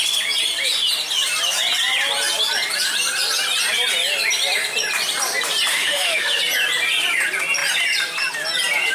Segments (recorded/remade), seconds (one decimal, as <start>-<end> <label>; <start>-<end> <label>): 0.0-5.7 recorded; 5.7-6.4 remade; 6.4-8.9 recorded